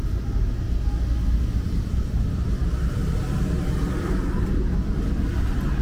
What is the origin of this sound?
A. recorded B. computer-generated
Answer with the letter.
A